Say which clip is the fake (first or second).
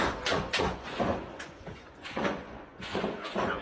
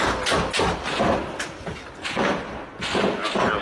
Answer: first